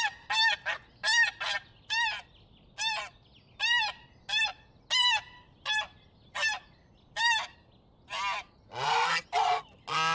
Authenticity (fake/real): real